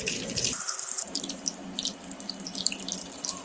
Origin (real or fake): fake